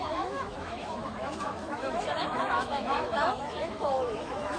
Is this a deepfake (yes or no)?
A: yes